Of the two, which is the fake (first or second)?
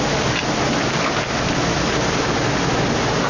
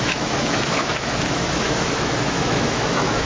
second